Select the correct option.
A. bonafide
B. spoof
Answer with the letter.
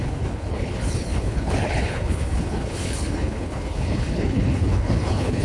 B